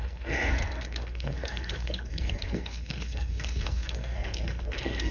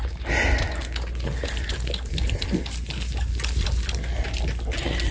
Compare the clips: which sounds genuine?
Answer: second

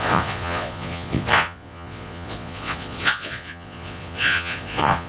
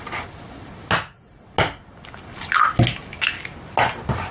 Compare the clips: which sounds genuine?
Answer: second